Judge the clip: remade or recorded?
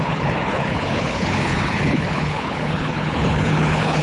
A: remade